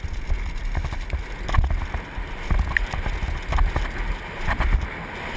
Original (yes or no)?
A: yes